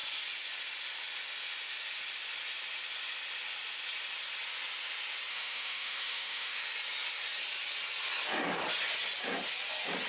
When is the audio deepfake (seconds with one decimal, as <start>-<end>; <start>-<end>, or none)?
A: 5.3-6.6